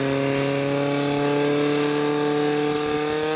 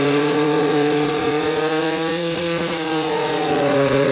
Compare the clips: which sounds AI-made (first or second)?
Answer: second